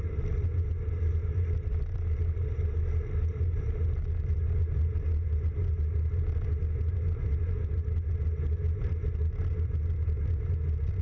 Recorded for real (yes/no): yes